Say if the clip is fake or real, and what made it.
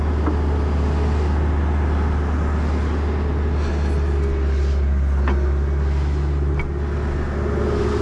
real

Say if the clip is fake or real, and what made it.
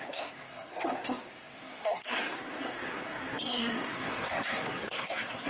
fake, codec, SNAC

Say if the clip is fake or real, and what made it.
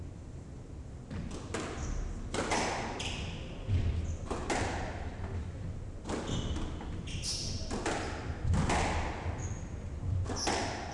real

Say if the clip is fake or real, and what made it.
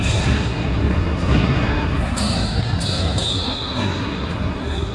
fake, codec, SNAC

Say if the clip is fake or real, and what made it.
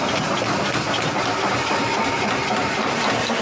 real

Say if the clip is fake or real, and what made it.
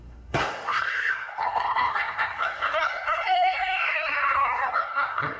fake, codec, SNAC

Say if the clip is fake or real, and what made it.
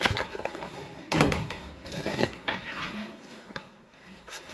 fake, codec, SNAC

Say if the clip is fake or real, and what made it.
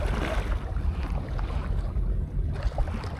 real